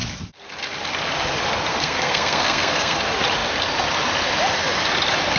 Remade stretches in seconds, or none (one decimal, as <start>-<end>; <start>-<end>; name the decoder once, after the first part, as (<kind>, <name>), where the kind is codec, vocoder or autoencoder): 1.7-3.0 (codec, SNAC)